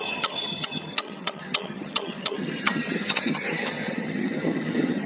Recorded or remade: remade